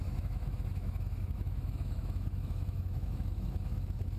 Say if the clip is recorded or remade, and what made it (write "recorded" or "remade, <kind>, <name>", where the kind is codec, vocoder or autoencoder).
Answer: remade, autoencoder, DAC-VAE